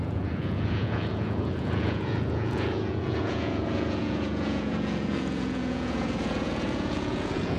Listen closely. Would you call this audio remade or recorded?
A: remade